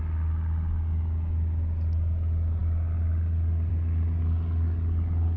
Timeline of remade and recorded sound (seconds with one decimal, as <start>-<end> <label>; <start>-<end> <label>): 0.0-5.4 recorded